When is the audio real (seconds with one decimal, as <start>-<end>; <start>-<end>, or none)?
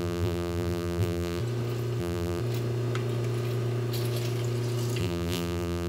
1.4-2.0; 2.4-5.0